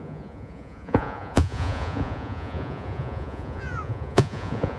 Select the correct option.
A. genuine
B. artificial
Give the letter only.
B